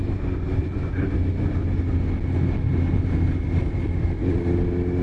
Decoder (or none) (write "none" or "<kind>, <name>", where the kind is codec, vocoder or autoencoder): none